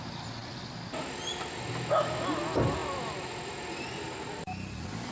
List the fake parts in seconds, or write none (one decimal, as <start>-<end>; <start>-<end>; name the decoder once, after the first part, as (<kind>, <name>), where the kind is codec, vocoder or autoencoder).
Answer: none